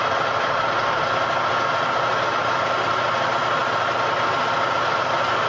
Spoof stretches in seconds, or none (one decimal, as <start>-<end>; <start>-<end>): none